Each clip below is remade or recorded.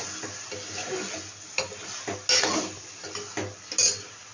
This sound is recorded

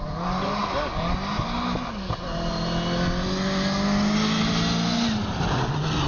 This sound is recorded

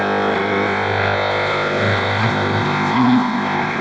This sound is remade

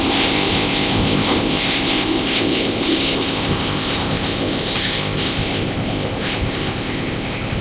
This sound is remade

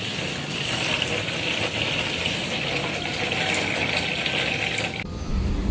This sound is recorded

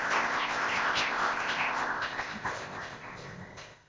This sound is remade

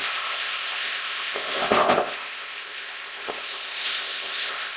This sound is remade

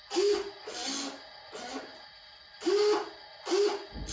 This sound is recorded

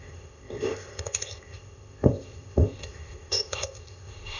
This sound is remade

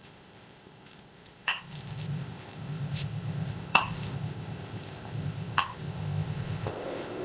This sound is remade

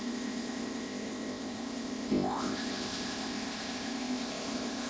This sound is remade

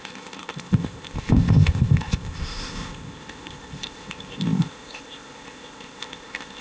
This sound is remade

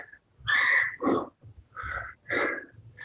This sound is recorded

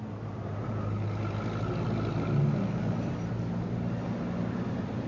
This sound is recorded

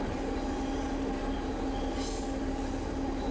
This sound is recorded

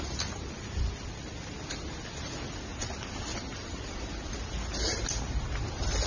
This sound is recorded